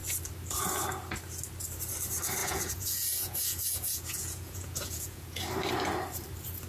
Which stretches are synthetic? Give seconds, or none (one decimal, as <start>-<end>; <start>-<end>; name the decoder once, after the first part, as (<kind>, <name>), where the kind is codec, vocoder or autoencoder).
2.4-5.4 (vocoder, Vocos)